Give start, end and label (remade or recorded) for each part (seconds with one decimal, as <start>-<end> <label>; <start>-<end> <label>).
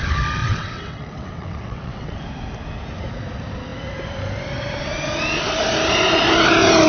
0.0-0.4 recorded; 0.4-2.2 remade; 2.2-6.9 recorded